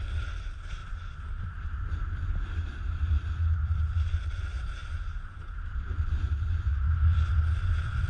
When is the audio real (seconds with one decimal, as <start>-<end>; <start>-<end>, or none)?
0.0-8.1